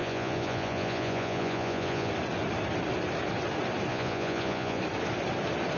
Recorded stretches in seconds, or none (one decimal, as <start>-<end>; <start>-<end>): 2.1-3.9; 4.8-5.8